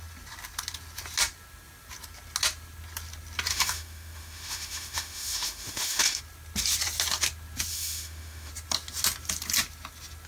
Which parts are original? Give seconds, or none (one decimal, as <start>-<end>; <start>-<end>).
0.0-3.5; 6.2-7.7; 8.5-10.3